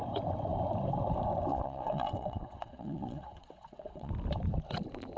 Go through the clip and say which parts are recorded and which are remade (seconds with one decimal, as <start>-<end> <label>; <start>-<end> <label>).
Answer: 0.0-1.5 recorded; 1.5-4.1 remade; 4.1-5.2 recorded